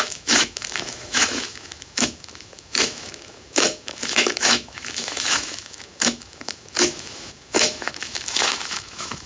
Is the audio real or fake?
fake